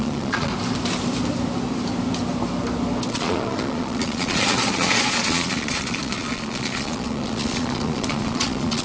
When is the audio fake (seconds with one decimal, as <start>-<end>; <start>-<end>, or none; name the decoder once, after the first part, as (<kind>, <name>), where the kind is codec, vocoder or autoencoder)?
0.0-0.5 (vocoder, Vocos); 3.1-8.8